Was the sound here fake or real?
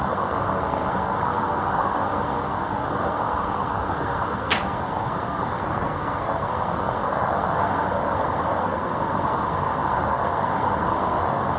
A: fake